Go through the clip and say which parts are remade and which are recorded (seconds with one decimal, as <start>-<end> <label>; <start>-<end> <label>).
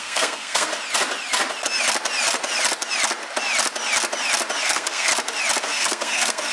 0.0-0.7 remade; 0.7-4.6 recorded; 4.6-5.1 remade; 5.1-5.6 recorded; 5.6-6.5 remade